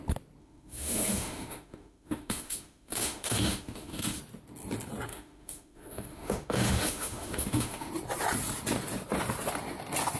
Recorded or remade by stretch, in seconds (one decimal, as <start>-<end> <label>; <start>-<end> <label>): 0.0-0.4 recorded; 0.4-4.2 remade; 4.2-5.1 recorded; 5.1-7.9 remade; 7.9-10.2 recorded